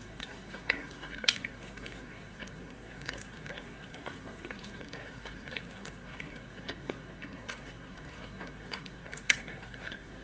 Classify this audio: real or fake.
fake